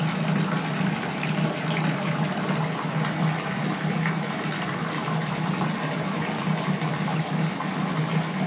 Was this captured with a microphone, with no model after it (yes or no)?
yes